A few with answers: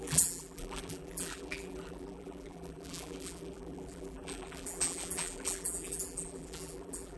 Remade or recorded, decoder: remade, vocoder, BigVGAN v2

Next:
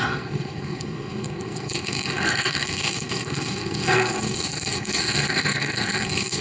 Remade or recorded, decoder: remade, codec, SNAC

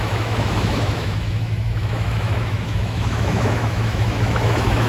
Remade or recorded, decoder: remade, autoencoder, DAC-VAE